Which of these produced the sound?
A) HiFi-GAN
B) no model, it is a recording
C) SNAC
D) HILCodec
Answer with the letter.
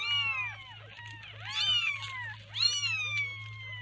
B